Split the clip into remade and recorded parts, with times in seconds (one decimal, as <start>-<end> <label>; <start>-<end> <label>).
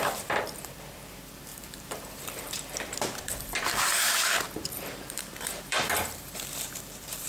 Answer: 0.0-7.3 remade